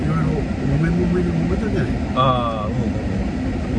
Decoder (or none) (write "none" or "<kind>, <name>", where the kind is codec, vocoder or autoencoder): none